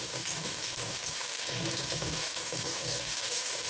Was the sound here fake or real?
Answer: fake